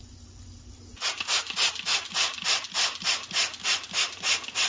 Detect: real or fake real